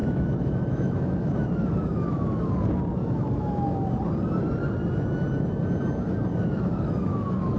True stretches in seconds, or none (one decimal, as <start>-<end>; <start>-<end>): 2.5-3.0; 3.9-6.3